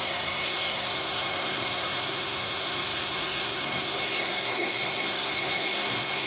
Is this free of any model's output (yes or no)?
no